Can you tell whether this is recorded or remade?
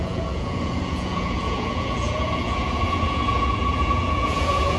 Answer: remade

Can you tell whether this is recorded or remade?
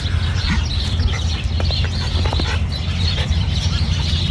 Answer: recorded